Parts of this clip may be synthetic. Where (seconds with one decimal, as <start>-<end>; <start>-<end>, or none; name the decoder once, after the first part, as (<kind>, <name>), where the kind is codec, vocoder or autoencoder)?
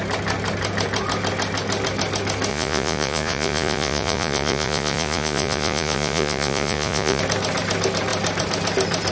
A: 2.5-7.2 (vocoder, Vocos)